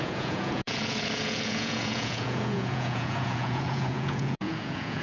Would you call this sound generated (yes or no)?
yes